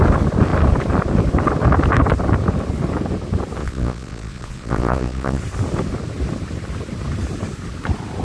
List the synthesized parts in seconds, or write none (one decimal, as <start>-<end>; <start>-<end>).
3.6-5.4